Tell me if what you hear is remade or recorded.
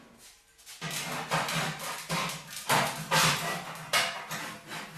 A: recorded